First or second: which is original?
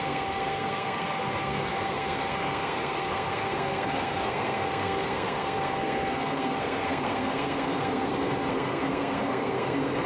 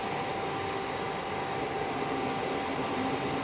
second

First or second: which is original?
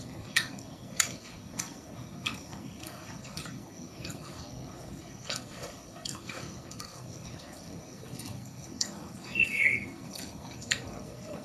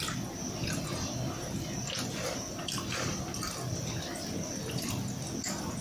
second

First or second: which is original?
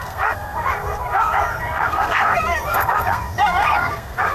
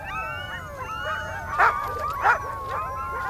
second